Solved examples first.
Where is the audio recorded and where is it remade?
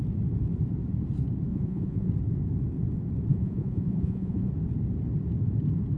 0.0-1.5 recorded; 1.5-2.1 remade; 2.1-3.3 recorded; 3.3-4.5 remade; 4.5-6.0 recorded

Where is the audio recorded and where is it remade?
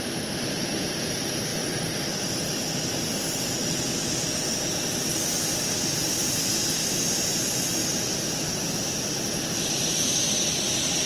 0.0-1.5 remade; 1.5-4.6 recorded; 4.6-7.8 remade; 7.8-9.4 recorded; 9.4-11.1 remade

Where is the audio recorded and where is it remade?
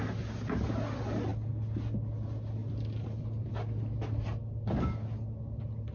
0.0-2.6 recorded; 2.6-3.5 remade; 3.5-5.9 recorded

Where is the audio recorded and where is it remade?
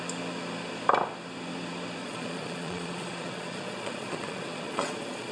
0.0-2.0 recorded; 2.0-5.3 remade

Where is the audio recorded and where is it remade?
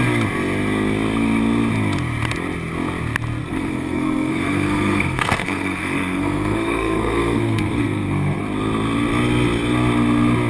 0.0-3.4 recorded; 3.4-8.4 remade; 8.4-10.5 recorded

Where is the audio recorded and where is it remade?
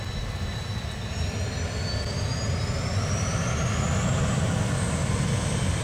0.0-5.8 recorded